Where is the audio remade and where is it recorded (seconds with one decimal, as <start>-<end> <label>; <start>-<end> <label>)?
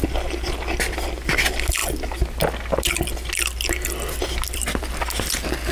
0.0-5.7 recorded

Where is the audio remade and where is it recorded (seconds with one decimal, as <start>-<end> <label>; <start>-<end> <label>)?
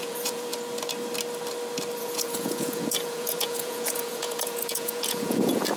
0.0-0.5 remade; 0.5-2.0 recorded; 2.0-5.8 remade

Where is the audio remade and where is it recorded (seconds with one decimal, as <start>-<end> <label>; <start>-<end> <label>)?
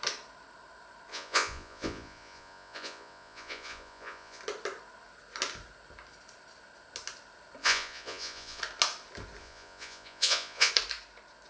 0.0-1.1 recorded; 1.1-4.4 remade; 4.4-7.6 recorded; 7.6-8.6 remade; 8.6-9.4 recorded; 9.4-10.7 remade; 10.7-11.5 recorded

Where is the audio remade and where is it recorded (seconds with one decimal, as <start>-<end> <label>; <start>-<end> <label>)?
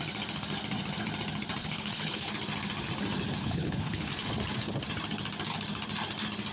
0.0-1.6 recorded; 1.6-2.3 remade; 2.3-3.4 recorded; 3.4-4.1 remade; 4.1-6.5 recorded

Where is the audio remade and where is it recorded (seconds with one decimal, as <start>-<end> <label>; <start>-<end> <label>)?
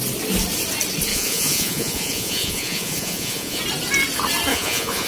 0.0-1.1 recorded; 1.1-3.6 remade; 3.6-4.5 recorded; 4.5-5.1 remade